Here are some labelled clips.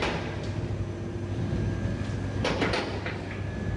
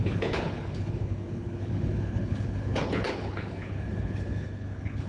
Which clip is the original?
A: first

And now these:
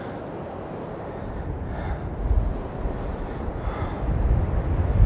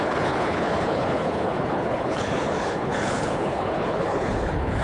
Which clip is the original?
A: first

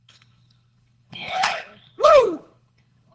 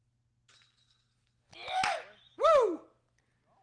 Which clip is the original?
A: second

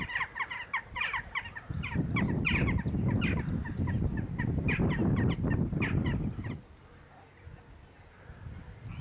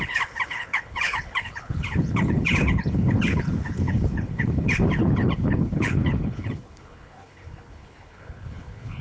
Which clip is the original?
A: first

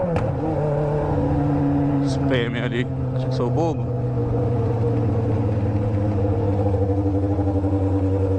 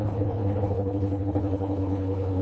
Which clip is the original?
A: first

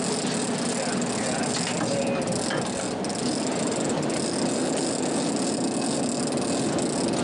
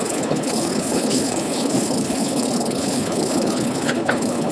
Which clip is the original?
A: first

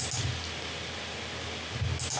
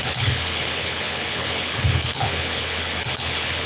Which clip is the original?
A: first